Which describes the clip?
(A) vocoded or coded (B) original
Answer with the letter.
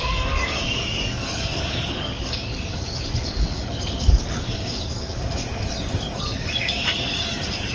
A